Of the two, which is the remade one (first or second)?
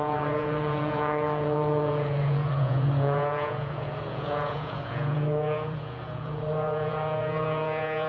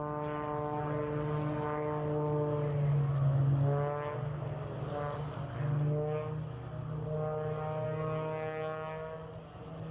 first